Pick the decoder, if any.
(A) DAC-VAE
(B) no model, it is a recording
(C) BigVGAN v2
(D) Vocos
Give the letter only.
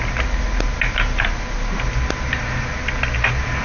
B